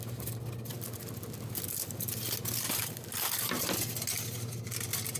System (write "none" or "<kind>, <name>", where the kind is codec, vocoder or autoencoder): none